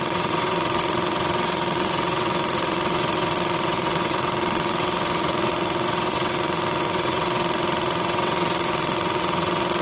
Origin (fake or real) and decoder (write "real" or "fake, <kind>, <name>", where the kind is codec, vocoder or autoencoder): fake, vocoder, WaveNeXt